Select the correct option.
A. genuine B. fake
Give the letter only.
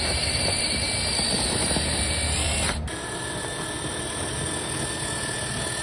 A